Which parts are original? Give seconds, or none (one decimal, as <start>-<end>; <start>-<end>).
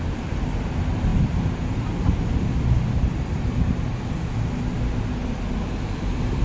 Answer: 0.0-6.4